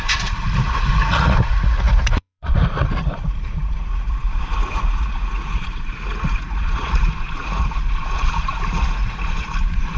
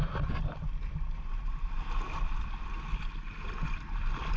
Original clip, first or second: second